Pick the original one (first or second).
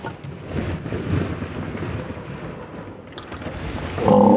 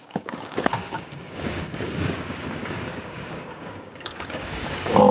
first